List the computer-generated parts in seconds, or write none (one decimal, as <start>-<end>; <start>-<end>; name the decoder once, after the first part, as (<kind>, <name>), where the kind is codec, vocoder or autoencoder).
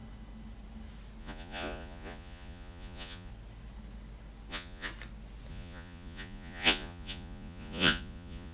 1.2-3.3 (vocoder, Vocos); 4.5-4.9; 5.5-8.5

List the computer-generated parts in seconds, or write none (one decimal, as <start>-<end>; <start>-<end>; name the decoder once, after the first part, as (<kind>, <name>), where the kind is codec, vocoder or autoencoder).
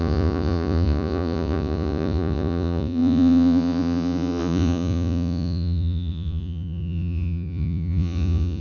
0.0-8.6 (vocoder, Vocos)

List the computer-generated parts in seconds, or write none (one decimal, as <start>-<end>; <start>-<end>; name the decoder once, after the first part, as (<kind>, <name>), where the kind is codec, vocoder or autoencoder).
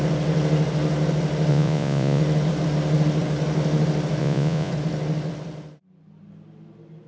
1.5-2.2 (vocoder, Vocos); 4.2-4.7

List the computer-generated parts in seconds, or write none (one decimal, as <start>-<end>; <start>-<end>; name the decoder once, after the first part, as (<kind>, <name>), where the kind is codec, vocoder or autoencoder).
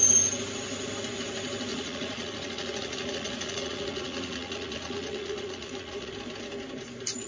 1.7-6.1 (vocoder, Vocos)